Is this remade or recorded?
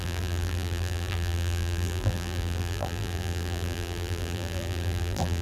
remade